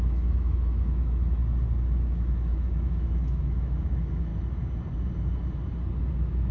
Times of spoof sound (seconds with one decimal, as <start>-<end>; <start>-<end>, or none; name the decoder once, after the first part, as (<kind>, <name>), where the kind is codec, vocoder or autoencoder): 0.0-1.4 (autoencoder, DAC-VAE); 2.0-4.3; 6.1-6.5